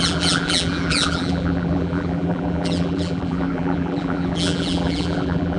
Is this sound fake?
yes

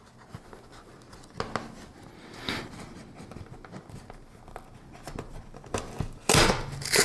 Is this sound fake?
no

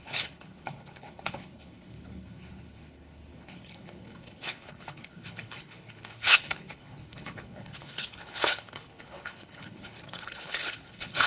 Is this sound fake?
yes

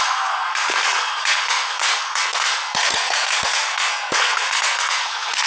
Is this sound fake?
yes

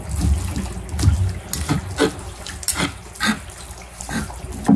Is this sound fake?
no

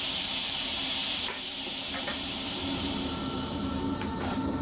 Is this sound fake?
yes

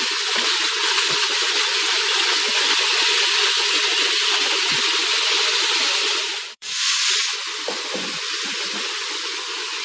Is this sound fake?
yes